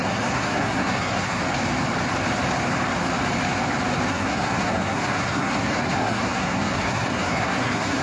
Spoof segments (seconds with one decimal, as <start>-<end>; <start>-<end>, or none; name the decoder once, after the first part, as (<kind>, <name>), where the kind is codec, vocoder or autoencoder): 0.0-1.4 (codec, SNAC); 4.1-8.0